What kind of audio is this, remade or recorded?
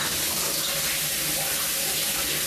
recorded